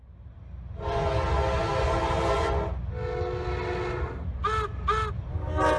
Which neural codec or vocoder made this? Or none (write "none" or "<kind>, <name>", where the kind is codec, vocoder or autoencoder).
none